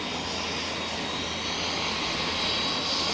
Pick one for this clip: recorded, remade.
recorded